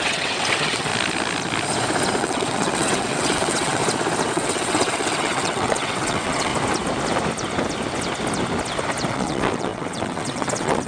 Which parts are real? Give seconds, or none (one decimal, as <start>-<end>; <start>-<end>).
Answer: 0.9-2.2; 3.8-4.3; 6.5-9.1